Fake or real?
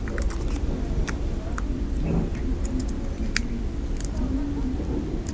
real